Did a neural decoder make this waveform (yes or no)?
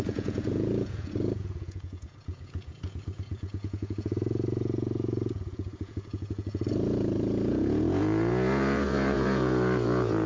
yes